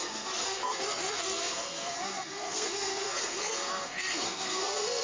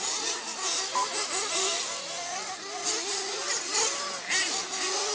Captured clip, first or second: second